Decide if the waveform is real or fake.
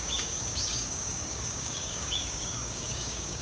fake